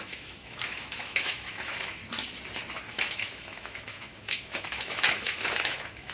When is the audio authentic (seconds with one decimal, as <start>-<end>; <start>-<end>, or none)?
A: 2.0-2.9